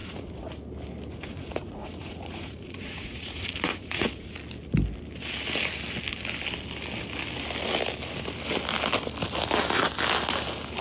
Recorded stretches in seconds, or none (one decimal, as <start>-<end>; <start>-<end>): 0.5-1.1; 4.4-10.8